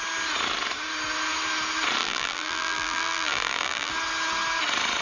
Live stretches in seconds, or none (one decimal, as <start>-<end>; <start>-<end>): 0.0-2.0; 3.9-5.0